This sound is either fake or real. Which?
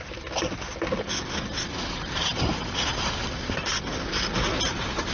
fake